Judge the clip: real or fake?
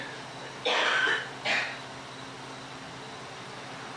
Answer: fake